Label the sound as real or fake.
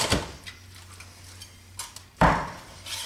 real